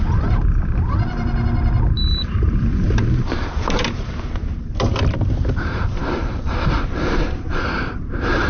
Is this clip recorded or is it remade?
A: remade